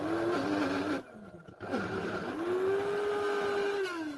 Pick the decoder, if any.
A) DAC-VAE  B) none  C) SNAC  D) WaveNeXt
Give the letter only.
B